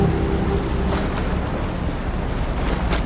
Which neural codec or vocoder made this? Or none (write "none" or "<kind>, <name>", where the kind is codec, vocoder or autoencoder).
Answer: none